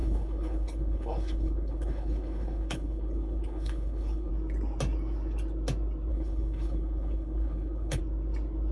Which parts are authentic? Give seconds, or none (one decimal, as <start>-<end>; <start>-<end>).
4.3-6.1; 8.0-8.7